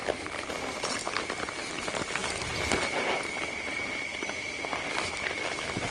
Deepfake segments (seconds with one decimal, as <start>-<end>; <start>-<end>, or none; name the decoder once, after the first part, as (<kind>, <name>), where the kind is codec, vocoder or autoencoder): none